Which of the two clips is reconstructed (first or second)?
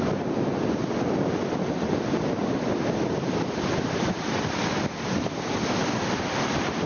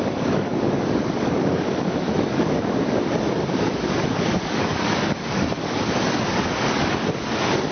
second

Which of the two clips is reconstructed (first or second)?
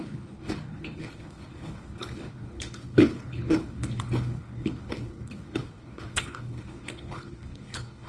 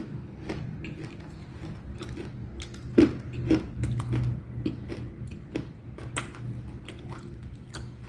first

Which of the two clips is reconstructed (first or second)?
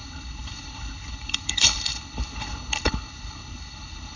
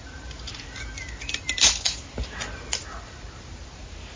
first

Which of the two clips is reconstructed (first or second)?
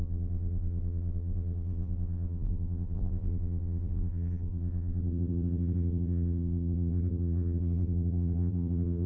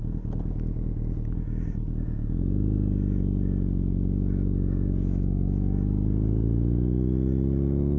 first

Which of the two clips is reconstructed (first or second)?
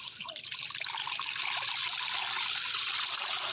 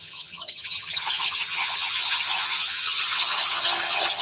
second